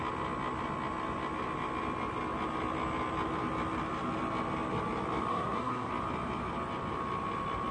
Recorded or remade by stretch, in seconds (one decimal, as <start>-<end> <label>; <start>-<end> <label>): 0.0-5.3 recorded; 5.3-5.9 remade; 5.9-7.7 recorded